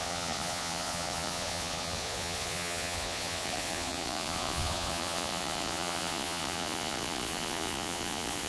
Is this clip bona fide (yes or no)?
no